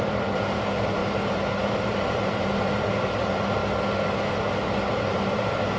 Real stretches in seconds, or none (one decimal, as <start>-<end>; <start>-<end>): 3.6-5.0